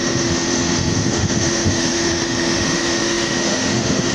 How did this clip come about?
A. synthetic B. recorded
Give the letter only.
A